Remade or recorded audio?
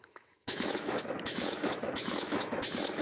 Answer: remade